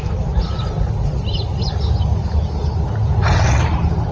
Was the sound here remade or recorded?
recorded